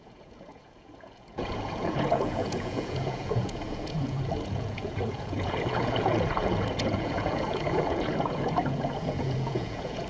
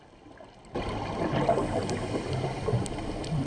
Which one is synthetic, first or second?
first